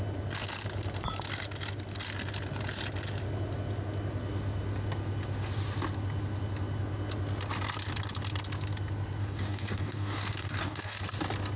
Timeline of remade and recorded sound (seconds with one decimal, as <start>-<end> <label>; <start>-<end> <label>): 0.0-9.2 recorded; 9.2-11.0 remade; 11.0-11.6 recorded